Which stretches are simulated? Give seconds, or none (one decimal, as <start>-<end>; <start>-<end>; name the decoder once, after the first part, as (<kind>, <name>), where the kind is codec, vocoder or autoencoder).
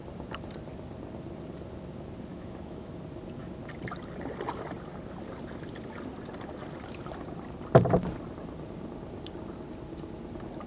2.3-3.0 (autoencoder, DAC-VAE)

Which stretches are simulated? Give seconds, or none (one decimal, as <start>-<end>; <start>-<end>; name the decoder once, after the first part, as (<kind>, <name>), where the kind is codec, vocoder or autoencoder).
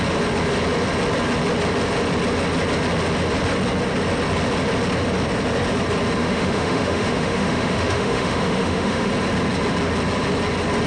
6.2-9.1 (autoencoder, DAC-VAE)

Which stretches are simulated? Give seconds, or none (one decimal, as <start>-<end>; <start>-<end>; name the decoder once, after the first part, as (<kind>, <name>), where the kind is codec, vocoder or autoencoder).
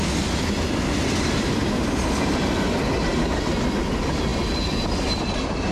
none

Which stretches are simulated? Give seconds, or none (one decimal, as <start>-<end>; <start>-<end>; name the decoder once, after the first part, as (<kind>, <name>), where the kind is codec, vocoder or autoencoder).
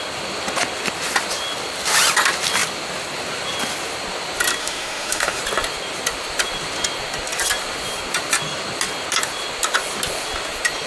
4.6-5.4 (autoencoder, DAC-VAE)